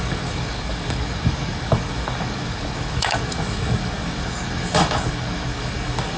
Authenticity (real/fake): fake